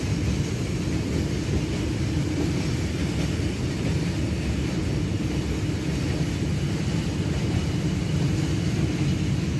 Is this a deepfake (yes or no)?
no